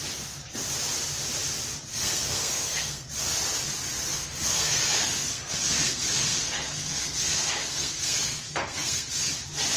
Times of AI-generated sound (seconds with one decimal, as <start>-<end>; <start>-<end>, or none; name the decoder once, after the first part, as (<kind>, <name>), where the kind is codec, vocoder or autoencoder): 1.9-3.1 (codec, SNAC); 4.1-9.3